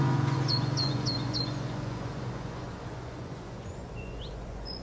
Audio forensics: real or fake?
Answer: fake